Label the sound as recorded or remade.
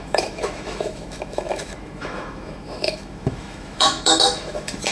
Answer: remade